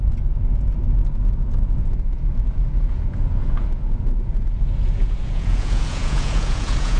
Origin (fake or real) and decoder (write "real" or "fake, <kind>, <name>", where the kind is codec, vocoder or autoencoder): fake, vocoder, Vocos